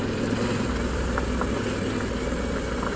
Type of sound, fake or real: real